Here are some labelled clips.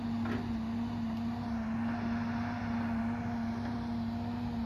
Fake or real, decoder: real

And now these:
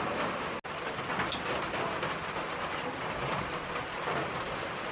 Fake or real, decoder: real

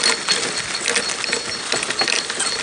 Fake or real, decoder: real